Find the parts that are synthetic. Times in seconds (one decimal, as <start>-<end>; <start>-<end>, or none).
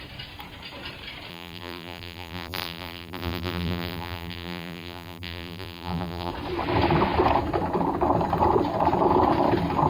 1.3-6.3